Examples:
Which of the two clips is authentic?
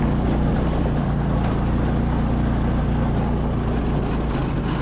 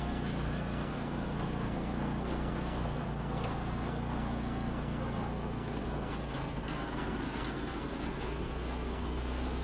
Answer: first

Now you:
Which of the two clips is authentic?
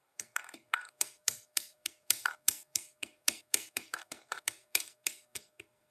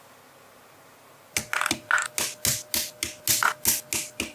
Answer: second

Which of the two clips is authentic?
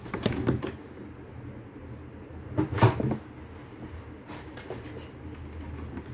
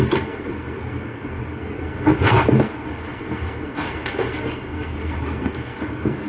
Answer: first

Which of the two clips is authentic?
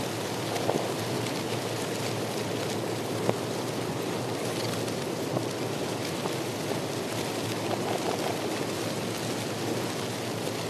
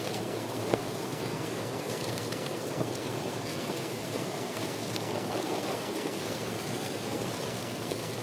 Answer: first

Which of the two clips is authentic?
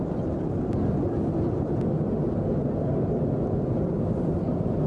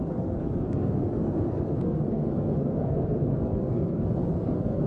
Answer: first